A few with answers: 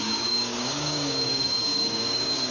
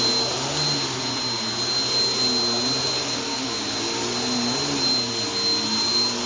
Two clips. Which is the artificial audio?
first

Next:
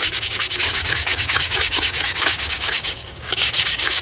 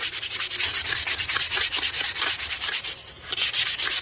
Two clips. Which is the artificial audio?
first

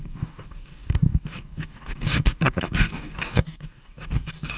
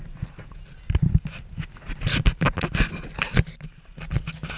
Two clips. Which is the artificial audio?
first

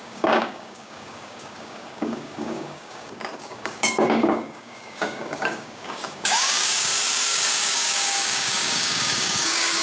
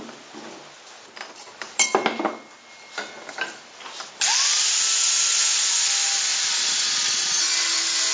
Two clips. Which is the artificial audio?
first